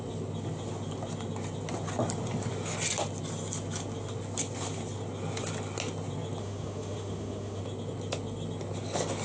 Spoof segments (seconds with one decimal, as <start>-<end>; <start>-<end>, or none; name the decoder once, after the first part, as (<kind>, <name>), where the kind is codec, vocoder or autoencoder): 6.4-7.6 (autoencoder, DAC-VAE)